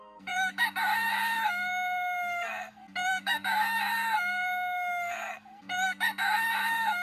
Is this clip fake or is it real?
fake